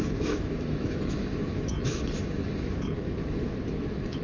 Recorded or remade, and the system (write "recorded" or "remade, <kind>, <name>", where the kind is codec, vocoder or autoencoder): remade, autoencoder, DAC-VAE